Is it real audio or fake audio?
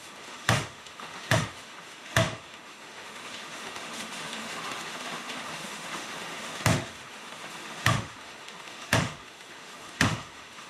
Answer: fake